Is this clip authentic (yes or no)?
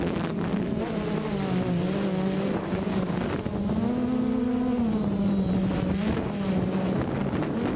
yes